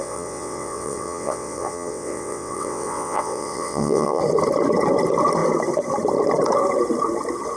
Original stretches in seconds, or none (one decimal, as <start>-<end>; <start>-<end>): 4.2-7.6